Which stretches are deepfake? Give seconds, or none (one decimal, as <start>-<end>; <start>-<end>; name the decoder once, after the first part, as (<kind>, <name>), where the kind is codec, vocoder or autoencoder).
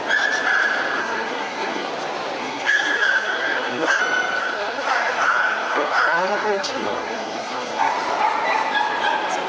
1.0-1.9 (codec, SNAC); 2.4-4.0; 4.4-7.9